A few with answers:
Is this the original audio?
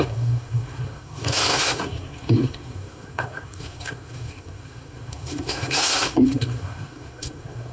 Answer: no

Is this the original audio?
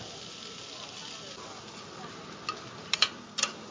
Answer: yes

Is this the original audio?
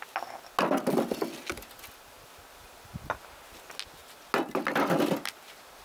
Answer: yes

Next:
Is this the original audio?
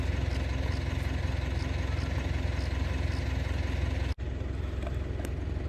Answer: yes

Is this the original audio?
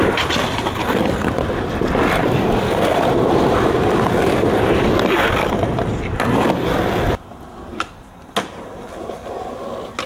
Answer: yes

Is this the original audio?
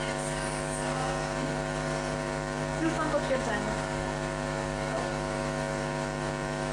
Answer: no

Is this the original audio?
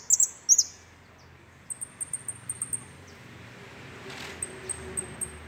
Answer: yes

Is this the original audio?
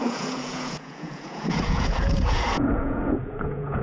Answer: no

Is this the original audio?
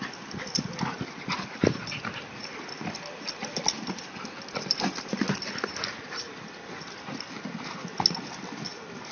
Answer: yes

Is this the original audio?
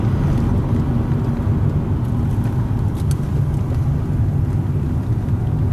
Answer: yes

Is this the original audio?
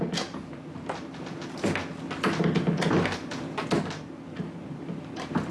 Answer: yes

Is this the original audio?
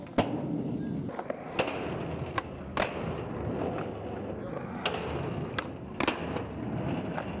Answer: yes